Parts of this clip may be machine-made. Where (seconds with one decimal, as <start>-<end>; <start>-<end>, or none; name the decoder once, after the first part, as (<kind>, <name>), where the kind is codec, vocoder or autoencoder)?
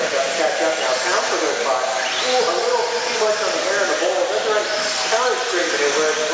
none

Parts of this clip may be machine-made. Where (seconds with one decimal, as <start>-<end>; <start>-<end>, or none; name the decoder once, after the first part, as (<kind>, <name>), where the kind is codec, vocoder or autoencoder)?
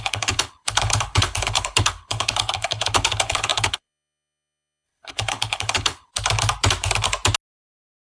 0.0-6.1 (codec, HILCodec)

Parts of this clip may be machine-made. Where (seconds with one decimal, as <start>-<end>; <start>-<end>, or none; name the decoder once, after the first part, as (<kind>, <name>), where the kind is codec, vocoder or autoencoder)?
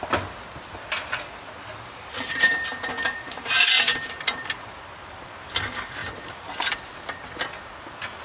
none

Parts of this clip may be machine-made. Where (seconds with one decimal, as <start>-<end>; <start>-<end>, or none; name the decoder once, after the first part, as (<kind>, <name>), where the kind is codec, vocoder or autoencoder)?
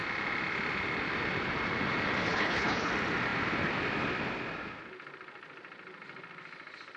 2.3-2.9 (codec, HILCodec)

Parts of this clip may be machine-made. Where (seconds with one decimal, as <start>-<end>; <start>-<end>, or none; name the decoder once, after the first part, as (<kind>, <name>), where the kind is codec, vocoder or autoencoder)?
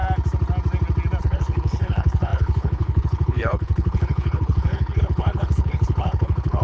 1.2-6.6 (codec, HILCodec)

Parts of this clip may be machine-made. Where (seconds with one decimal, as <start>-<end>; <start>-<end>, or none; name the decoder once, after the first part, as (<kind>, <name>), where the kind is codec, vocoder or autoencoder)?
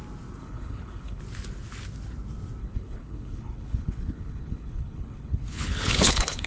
0.4-1.2 (codec, HILCodec); 2.6-6.5